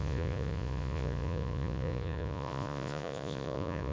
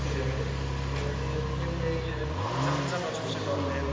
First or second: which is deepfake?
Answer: first